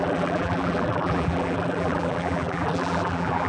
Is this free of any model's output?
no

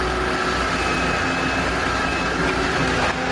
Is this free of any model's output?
yes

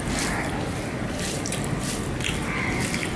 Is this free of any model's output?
no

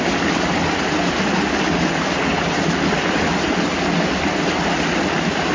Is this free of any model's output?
yes